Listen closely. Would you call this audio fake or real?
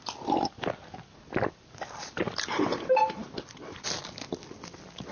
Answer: real